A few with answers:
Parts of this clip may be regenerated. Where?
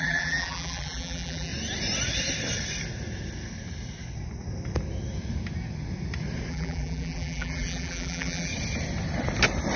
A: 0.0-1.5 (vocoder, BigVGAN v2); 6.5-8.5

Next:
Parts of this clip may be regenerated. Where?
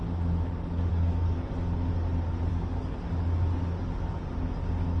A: 0.9-1.5 (codec, DAC); 2.5-3.1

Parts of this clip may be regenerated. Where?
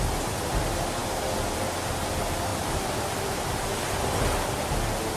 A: 2.5-3.7 (vocoder, BigVGAN v2)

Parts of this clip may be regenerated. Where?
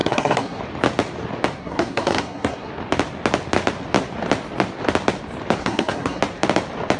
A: 0.0-0.6 (codec, SNAC); 1.6-2.7; 5.6-6.2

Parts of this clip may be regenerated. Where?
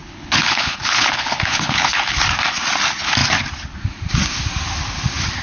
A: 0.0-2.2 (codec, HILCodec)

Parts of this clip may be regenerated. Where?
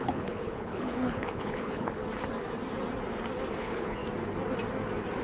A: 0.0-2.0 (codec, HILCodec); 3.6-4.0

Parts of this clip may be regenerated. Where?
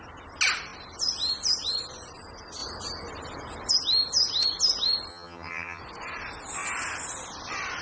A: 5.1-5.8 (vocoder, HiFi-GAN)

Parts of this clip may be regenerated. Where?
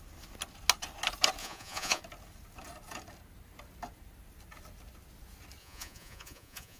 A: 1.4-2.0 (vocoder, Vocos); 5.6-6.8